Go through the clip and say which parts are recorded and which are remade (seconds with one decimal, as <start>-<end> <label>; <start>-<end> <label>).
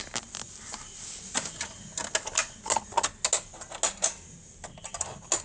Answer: 0.0-5.4 recorded